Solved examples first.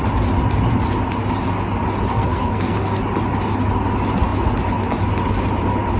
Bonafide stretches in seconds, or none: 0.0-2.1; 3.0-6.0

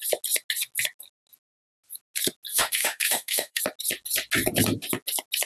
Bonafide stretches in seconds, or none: 0.0-2.5; 3.6-5.5

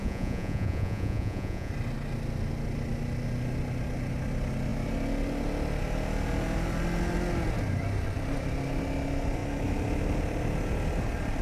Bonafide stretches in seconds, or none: 1.7-11.4

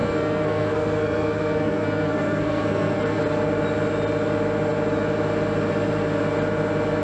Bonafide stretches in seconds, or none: 3.2-7.0

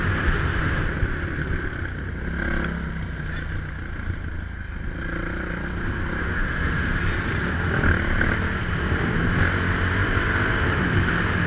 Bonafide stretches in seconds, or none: 0.0-6.2; 7.0-11.5

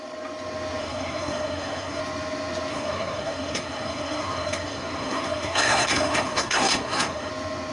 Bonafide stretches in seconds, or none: 0.0-0.8; 2.0-2.7; 7.3-7.7

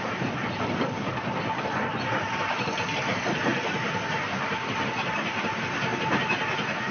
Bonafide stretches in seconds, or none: 0.0-6.9

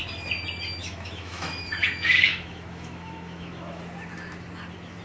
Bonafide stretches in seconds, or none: 0.0-0.8; 3.8-5.0